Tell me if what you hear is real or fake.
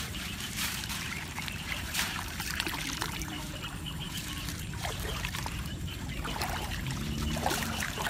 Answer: fake